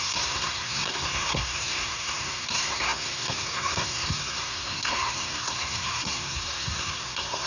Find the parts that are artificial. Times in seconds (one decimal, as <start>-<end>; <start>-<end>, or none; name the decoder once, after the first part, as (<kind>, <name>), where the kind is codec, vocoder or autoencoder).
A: 0.0-7.5 (codec, SNAC)